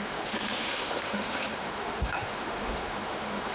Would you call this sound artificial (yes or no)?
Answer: yes